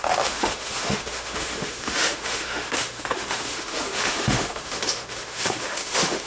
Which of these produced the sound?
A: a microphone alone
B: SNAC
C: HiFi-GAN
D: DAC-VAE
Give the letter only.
D